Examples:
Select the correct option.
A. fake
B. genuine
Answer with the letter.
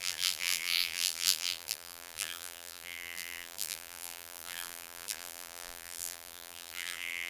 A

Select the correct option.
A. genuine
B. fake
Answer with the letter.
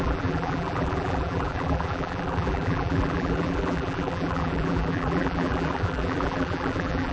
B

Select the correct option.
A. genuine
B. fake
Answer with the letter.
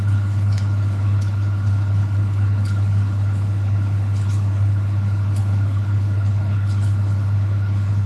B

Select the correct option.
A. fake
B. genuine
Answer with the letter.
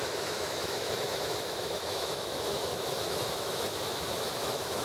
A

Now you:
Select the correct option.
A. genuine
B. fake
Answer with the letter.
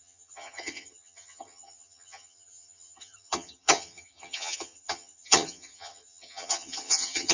B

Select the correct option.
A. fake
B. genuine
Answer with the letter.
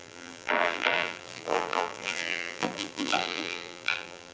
A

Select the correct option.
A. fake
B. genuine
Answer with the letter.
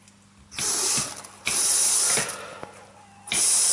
B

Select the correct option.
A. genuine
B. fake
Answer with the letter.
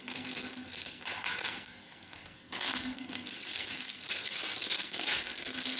B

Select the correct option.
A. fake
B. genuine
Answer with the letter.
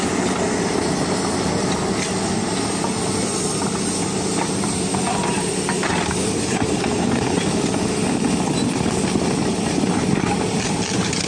B